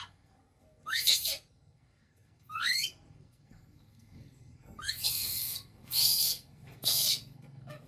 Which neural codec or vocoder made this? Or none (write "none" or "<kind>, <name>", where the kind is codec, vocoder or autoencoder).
codec, SNAC